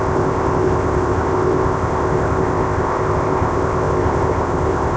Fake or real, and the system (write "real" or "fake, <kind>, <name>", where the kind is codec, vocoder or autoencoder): fake, codec, ZipCodec